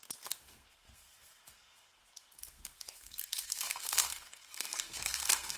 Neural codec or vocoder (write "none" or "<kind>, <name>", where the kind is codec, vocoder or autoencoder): codec, SNAC